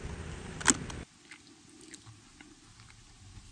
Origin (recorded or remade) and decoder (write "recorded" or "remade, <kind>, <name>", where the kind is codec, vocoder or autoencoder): recorded